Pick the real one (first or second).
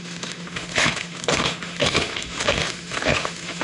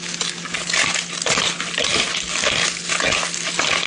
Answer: second